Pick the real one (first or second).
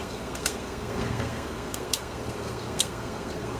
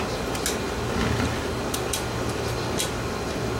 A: second